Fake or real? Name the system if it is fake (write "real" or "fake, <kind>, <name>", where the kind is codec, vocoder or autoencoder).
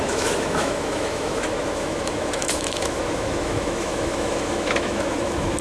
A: fake, autoencoder, DAC-VAE